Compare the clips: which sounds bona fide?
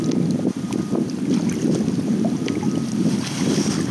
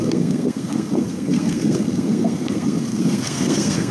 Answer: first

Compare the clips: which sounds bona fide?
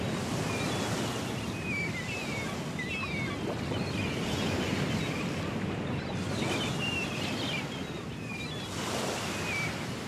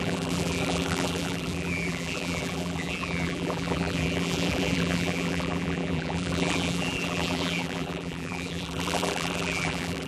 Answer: first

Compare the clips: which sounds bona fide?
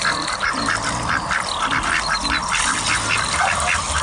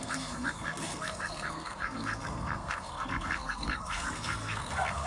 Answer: first